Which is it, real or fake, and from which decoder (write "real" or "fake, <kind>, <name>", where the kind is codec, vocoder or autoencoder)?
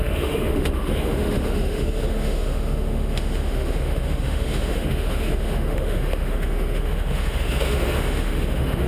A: fake, autoencoder, DAC-VAE